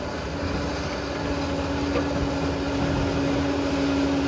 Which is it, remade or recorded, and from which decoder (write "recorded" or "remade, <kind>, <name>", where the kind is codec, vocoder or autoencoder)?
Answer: recorded